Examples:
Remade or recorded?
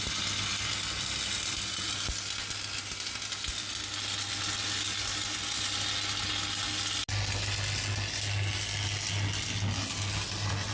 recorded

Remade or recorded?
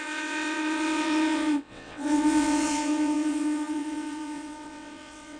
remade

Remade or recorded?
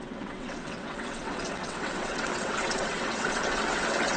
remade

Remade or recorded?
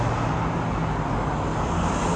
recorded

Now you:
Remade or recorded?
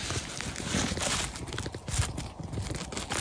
recorded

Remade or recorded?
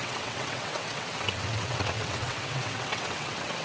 remade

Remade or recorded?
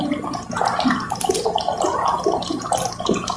recorded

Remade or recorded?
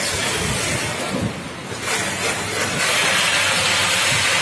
recorded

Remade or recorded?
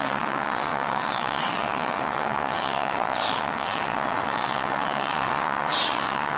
remade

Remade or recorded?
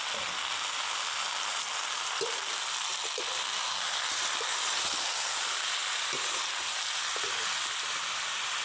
recorded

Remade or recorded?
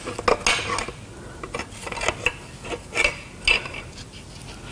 recorded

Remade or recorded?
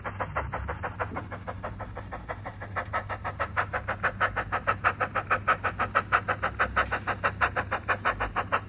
recorded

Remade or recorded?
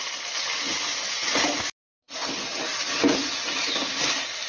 recorded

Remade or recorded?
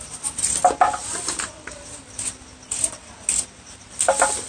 recorded